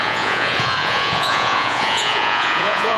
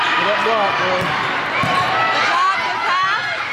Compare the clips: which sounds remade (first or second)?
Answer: first